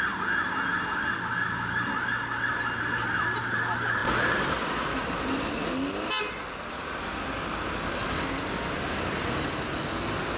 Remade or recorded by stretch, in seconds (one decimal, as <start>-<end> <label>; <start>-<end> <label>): 0.0-10.4 recorded